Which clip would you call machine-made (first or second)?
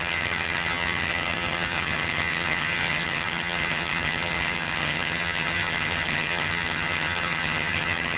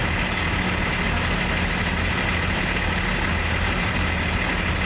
first